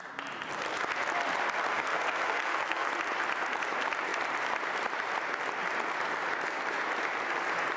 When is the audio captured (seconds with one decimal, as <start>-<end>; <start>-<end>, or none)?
0.0-1.7; 2.9-7.8